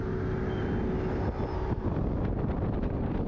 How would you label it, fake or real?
real